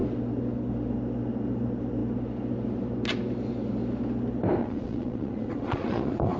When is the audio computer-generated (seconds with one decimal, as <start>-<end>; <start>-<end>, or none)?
4.6-6.4